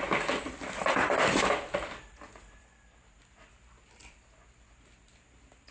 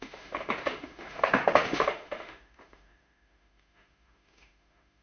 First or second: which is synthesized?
second